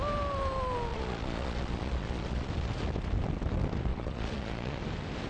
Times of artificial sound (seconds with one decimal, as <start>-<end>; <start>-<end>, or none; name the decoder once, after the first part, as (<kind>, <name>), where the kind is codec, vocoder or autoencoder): 0.9-2.5 (vocoder, Vocos); 3.9-4.8